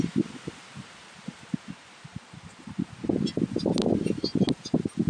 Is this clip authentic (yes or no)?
yes